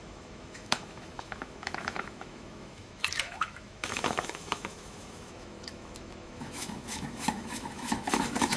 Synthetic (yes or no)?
yes